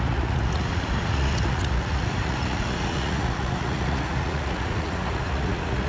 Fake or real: fake